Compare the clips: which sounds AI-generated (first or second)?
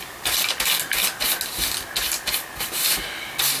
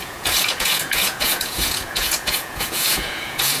second